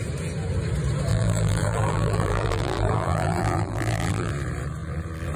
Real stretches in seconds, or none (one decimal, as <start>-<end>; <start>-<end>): 0.0-1.1; 4.3-5.4